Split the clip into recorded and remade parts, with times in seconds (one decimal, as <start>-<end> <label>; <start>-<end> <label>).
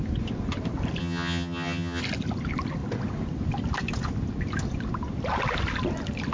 0.0-1.0 recorded; 1.0-2.0 remade; 2.0-6.3 recorded